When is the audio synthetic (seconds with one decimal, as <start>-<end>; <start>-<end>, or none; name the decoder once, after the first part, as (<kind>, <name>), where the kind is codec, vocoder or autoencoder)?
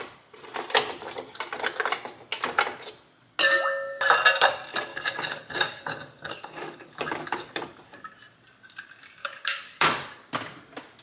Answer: 4.9-7.5 (codec, DAC); 9.2-10.3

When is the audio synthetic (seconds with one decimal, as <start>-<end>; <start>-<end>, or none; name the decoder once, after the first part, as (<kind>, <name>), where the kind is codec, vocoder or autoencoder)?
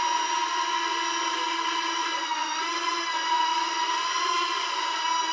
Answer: 2.0-4.4 (vocoder, Vocos)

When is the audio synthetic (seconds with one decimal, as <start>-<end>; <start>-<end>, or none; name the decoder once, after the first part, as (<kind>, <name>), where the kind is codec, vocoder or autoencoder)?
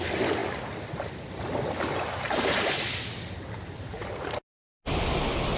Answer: none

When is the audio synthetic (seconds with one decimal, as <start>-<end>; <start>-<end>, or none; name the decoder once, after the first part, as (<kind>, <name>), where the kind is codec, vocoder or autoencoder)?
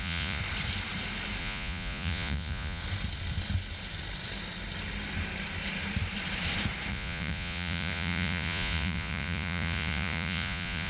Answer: 0.0-0.4 (vocoder, Vocos); 1.4-2.8; 6.9-10.9